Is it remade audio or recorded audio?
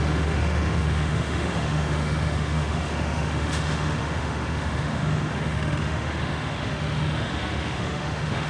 remade